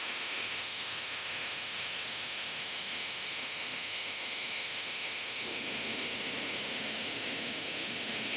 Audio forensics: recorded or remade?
remade